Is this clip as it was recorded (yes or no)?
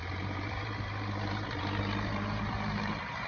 no